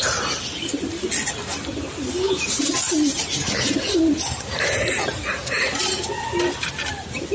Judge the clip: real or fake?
real